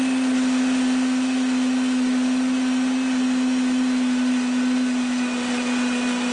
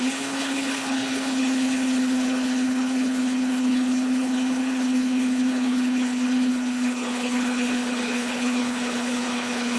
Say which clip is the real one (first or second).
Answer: first